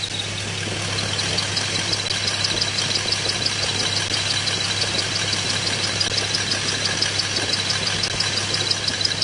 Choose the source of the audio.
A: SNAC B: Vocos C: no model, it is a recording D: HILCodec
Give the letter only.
C